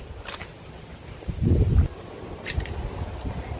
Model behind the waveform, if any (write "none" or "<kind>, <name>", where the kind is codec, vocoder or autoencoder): none